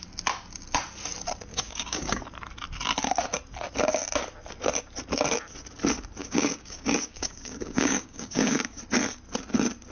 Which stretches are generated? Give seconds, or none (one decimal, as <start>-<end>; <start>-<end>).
1.5-2.2; 6.2-8.8